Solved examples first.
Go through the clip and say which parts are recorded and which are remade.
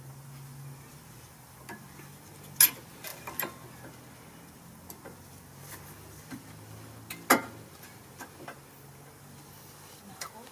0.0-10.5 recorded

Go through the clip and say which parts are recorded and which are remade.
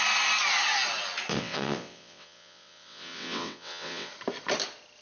0.0-1.3 recorded; 1.3-4.1 remade; 4.1-5.0 recorded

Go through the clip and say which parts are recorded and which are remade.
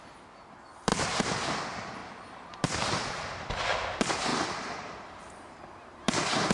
0.0-0.9 recorded; 0.9-1.5 remade; 1.5-4.3 recorded; 4.3-5.2 remade; 5.2-6.5 recorded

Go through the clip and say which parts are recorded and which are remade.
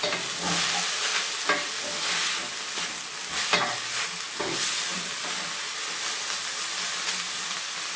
0.0-8.0 recorded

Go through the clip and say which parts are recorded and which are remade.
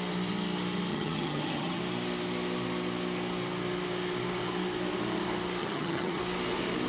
0.0-0.9 recorded; 0.9-1.8 remade; 1.8-5.6 recorded; 5.6-6.2 remade; 6.2-6.9 recorded